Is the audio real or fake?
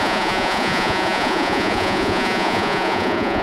fake